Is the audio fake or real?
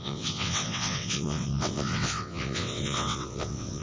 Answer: fake